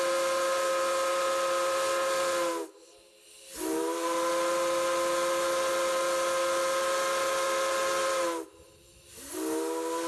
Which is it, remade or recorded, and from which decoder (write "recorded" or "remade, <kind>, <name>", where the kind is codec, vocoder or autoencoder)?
recorded